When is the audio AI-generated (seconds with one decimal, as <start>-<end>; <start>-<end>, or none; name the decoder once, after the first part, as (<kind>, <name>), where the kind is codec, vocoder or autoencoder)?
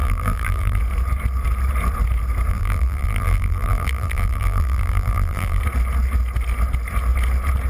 0.0-0.8 (vocoder, BigVGAN v2); 2.5-5.6